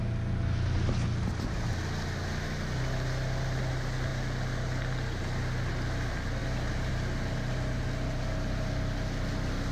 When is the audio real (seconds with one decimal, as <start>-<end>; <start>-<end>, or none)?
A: 0.0-9.7